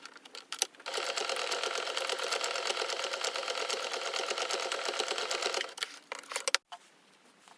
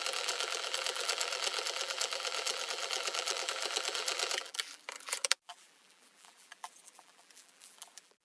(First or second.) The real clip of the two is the first